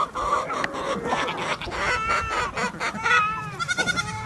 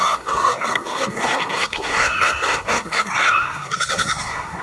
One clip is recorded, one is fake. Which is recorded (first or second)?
first